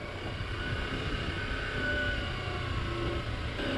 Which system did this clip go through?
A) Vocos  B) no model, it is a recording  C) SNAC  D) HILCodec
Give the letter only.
B